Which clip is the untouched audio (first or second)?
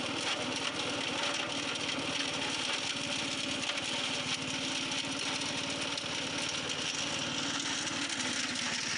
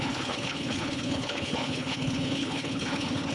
first